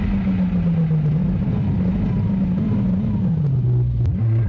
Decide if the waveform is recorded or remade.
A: recorded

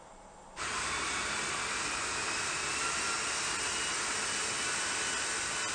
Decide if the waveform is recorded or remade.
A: recorded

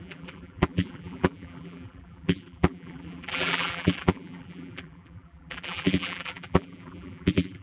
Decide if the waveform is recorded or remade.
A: remade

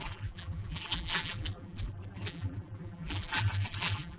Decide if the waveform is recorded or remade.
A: remade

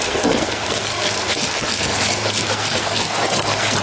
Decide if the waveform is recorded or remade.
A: remade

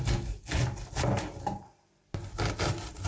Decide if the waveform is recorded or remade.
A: recorded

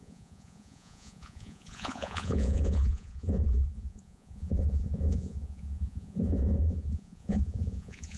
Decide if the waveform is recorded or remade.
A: remade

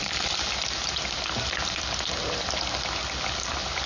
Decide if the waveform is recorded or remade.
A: recorded